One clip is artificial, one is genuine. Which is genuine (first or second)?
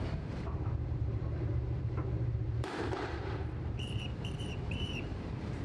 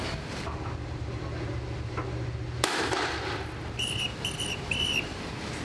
second